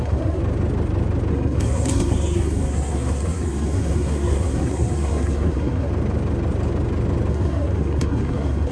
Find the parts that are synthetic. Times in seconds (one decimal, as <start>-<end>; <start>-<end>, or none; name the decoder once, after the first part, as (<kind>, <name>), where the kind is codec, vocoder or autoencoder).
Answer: 0.0-0.4 (codec, SNAC); 1.3-5.9; 7.3-8.7

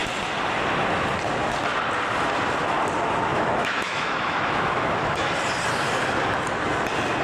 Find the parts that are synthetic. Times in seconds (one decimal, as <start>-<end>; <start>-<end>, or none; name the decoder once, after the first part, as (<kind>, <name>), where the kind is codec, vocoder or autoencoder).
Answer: 3.3-5.3 (autoencoder, DAC-VAE)

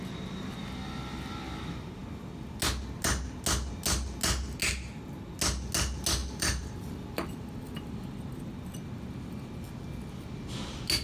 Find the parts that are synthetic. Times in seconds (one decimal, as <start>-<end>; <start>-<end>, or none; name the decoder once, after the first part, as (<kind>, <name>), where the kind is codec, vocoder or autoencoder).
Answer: 6.2-9.3 (vocoder, BigVGAN v2)

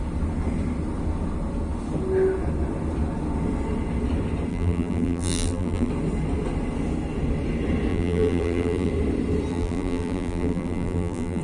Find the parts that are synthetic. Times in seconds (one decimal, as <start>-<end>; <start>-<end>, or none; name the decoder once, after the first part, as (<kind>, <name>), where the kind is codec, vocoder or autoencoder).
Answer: 4.5-5.9 (vocoder, BigVGAN v2); 7.9-8.9; 9.5-11.4